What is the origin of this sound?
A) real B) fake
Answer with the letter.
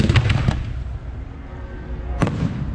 A